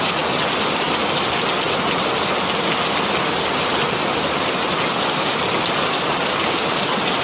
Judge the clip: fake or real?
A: real